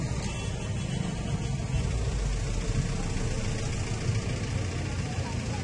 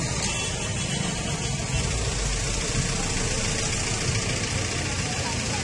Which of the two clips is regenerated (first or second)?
second